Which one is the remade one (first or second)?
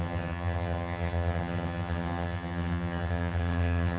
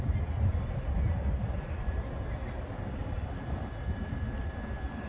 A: first